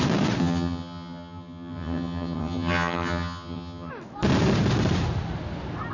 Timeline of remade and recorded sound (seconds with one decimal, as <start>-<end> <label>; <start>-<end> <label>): 0.0-0.4 recorded; 0.4-3.9 remade; 3.9-5.9 recorded